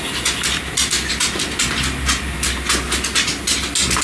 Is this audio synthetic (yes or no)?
no